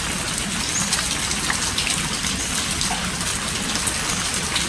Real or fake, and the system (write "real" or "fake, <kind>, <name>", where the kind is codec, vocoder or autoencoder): real